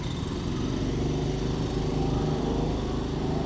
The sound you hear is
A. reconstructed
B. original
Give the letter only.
B